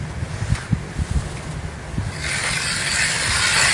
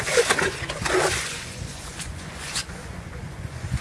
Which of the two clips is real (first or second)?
first